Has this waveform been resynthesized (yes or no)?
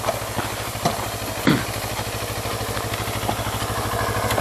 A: no